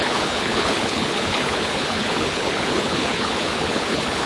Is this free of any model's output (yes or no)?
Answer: no